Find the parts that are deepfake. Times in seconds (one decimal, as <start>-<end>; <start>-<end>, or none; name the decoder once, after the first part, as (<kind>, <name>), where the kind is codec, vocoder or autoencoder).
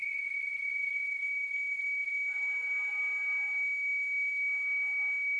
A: none